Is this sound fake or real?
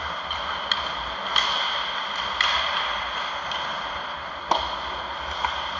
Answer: real